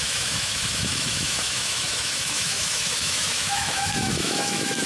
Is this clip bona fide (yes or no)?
no